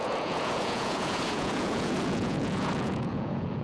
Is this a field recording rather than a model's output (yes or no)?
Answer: no